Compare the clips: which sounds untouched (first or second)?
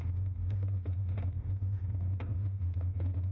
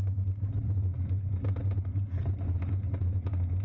second